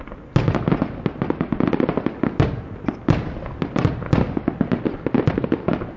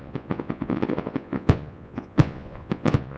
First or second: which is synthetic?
second